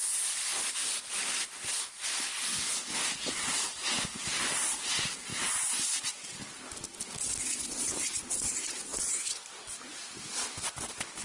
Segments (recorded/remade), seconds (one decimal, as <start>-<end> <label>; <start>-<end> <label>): 0.0-11.2 recorded